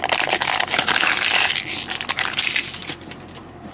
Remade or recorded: recorded